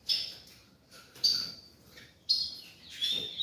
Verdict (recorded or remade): recorded